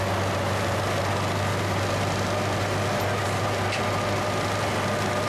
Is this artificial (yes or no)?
no